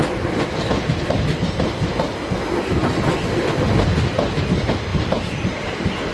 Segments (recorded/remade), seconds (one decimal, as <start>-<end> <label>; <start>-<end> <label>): 0.0-2.8 recorded; 2.8-3.8 remade; 3.8-4.9 recorded; 4.9-6.1 remade